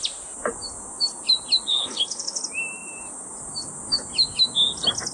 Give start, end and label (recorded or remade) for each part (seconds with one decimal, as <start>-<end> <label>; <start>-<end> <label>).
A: 0.0-1.7 recorded; 1.7-2.4 remade; 2.4-5.1 recorded